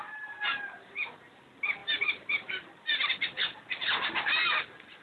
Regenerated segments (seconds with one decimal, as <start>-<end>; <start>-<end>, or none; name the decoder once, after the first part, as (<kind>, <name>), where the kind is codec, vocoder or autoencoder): 1.8-2.3 (vocoder, BigVGAN v2)